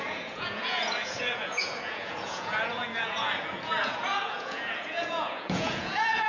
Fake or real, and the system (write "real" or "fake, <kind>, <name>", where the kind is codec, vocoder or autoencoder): fake, vocoder, Vocos